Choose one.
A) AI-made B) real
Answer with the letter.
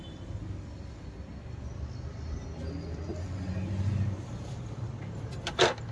B